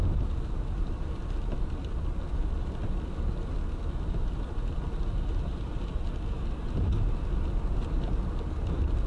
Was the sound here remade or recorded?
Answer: recorded